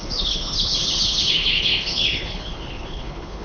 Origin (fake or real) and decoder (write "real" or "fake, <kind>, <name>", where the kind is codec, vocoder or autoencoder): fake, codec, HILCodec